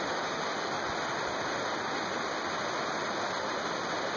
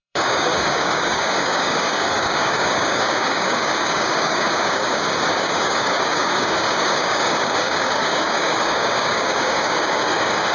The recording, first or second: first